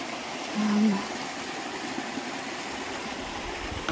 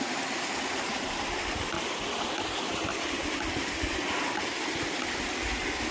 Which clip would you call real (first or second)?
second